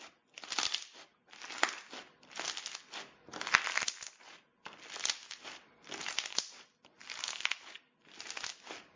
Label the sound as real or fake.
real